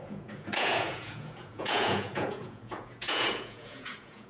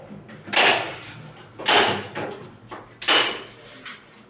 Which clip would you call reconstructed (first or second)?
first